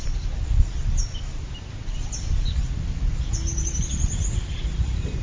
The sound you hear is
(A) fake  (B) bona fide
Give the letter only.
B